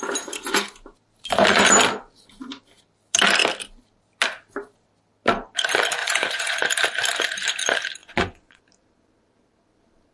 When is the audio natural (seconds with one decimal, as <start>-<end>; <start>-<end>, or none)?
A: 0.0-6.0; 6.6-8.0; 8.6-10.1